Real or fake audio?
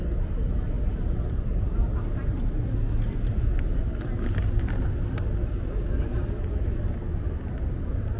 real